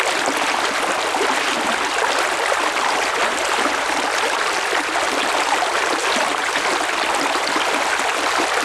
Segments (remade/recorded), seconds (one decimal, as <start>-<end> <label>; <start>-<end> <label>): 0.0-8.6 recorded